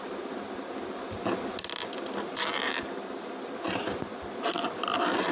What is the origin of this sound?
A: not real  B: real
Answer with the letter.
B